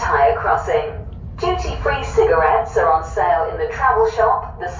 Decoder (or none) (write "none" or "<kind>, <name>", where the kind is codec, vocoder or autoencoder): none